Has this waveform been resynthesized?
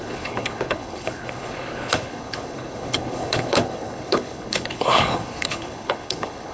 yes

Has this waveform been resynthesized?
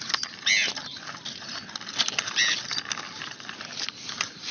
no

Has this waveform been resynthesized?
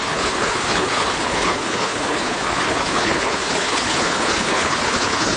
yes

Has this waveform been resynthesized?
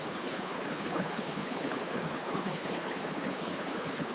yes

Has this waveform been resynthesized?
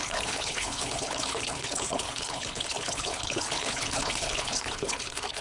yes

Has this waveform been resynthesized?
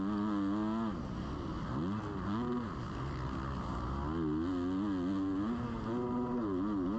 no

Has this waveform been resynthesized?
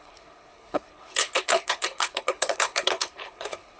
yes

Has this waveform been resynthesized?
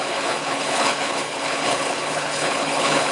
yes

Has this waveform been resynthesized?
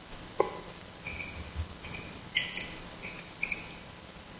no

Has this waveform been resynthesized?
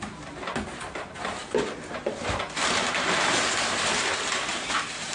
no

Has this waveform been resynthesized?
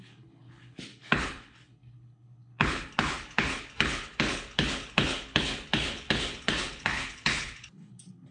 yes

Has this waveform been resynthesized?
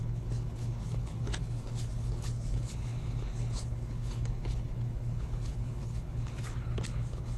yes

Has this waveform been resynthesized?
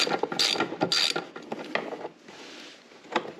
no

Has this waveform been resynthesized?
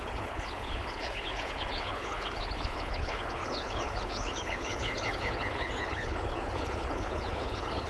yes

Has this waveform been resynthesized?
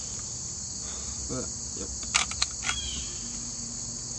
no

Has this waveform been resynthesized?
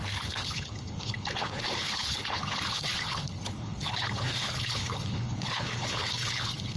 yes